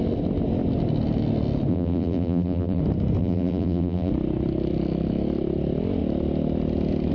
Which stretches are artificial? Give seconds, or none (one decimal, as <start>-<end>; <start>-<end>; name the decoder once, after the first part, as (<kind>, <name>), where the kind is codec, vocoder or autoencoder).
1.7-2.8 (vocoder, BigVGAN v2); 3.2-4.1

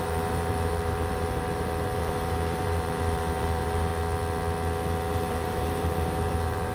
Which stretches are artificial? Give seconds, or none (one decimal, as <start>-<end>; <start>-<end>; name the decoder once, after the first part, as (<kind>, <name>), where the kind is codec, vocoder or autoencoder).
0.0-3.9 (vocoder, BigVGAN v2); 5.1-6.7

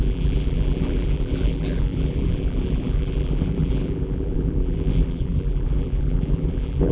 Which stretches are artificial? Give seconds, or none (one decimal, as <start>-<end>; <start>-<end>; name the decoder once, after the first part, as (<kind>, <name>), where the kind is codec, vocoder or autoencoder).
0.0-6.9 (vocoder, BigVGAN v2)

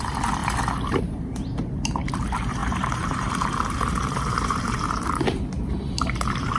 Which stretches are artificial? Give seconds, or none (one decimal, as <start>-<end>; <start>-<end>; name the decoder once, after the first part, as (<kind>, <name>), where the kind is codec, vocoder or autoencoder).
0.0-6.6 (vocoder, BigVGAN v2)

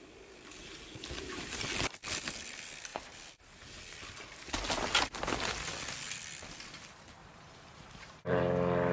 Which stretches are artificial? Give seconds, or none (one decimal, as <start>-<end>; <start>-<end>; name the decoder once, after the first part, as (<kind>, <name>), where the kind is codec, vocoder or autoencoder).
0.6-1.7 (vocoder, BigVGAN v2); 7.2-8.4